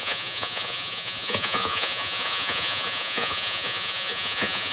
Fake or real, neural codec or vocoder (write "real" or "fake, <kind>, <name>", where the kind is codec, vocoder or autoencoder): fake, vocoder, Vocos